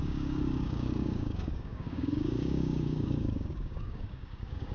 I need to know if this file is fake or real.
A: fake